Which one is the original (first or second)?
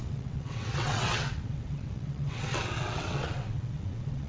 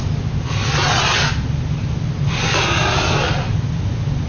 second